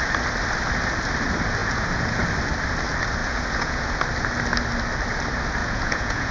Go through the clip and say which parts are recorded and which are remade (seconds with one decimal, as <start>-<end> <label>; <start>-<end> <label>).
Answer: 0.0-1.6 recorded; 1.6-2.3 remade; 2.3-3.2 recorded; 3.2-4.0 remade; 4.0-5.6 recorded; 5.6-6.3 remade